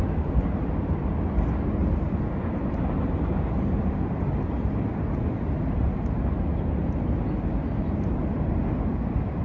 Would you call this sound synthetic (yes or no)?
no